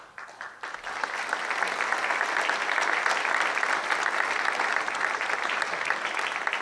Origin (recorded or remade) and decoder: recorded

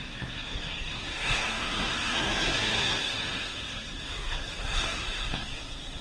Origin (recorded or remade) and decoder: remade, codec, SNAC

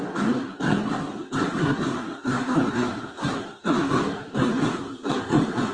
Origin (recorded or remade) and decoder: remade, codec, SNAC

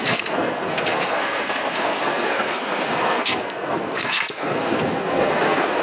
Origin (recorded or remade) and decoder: remade, codec, SNAC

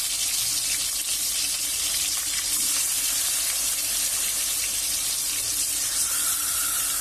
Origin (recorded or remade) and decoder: recorded